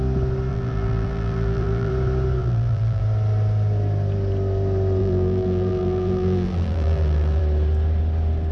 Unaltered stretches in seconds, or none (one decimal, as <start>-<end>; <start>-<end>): 0.0-0.5; 1.9-2.4; 3.0-5.0; 7.4-8.5